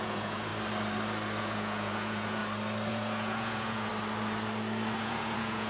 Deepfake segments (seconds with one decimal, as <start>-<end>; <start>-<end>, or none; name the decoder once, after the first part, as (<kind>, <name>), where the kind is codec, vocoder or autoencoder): 0.0-0.5 (vocoder, Vocos); 1.4-2.4; 2.9-3.9; 5.0-5.7